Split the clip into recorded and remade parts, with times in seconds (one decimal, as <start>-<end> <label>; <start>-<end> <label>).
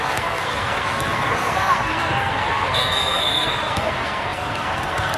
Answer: 0.0-5.2 remade